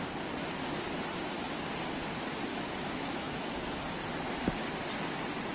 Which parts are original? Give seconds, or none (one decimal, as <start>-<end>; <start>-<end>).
0.0-2.5; 3.5-5.5